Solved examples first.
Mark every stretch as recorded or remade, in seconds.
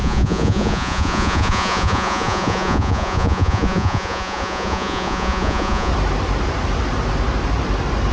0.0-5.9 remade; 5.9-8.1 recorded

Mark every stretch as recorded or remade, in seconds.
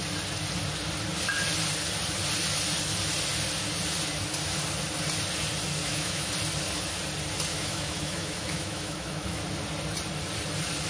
0.0-5.8 recorded; 5.8-6.3 remade; 6.3-7.5 recorded; 7.5-9.4 remade; 9.4-10.9 recorded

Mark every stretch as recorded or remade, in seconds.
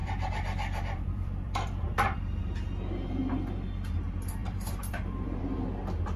0.0-2.4 remade; 2.4-4.4 recorded; 4.4-5.4 remade; 5.4-6.2 recorded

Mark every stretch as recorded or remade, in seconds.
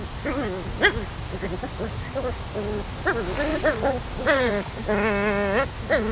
0.0-3.5 recorded; 3.5-4.5 remade; 4.5-6.1 recorded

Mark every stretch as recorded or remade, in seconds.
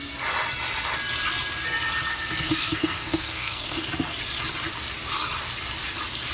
0.0-2.1 recorded; 2.1-3.8 remade; 3.8-6.3 recorded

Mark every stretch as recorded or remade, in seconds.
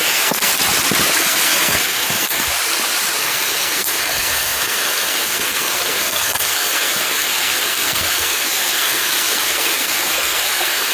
0.0-0.5 remade; 0.5-1.2 recorded; 1.2-2.5 remade; 2.5-3.2 recorded; 3.2-10.9 remade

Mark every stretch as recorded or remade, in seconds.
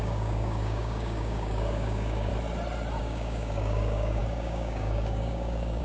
0.0-2.3 remade; 2.3-3.0 recorded; 3.0-5.8 remade